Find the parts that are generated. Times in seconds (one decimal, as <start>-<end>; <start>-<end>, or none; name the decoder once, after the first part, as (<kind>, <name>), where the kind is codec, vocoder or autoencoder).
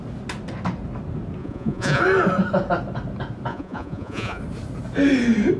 1.4-2.0 (vocoder, Vocos); 3.5-4.4